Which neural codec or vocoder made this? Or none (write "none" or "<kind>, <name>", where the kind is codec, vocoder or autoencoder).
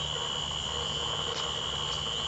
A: none